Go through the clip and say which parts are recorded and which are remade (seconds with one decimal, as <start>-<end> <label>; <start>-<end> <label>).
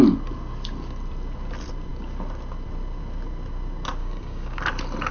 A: 0.0-4.0 recorded; 4.0-4.6 remade; 4.6-5.1 recorded